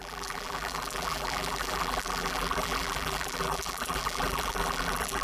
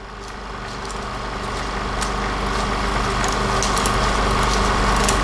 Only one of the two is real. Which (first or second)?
second